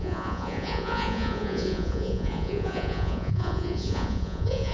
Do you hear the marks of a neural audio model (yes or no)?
yes